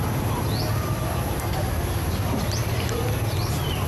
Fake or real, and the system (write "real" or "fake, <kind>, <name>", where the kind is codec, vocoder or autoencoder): real